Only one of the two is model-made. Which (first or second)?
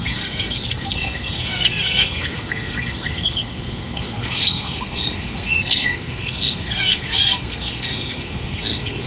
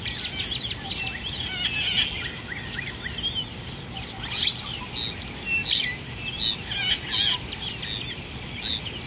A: first